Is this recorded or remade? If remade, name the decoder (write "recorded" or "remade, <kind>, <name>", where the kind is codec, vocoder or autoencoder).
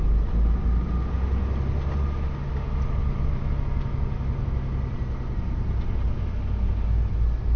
recorded